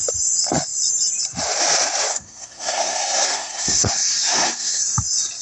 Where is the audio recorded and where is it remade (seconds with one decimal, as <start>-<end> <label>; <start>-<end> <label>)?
0.0-2.1 recorded; 2.1-4.8 remade; 4.8-5.4 recorded